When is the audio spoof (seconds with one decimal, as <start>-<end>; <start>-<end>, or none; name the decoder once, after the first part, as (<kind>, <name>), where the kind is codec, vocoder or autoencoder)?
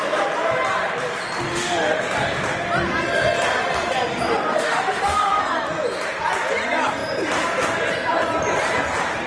1.5-2.0 (autoencoder, DAC-VAE); 4.5-5.4